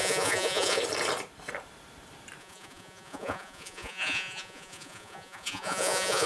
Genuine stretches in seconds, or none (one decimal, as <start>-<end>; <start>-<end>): 0.8-2.4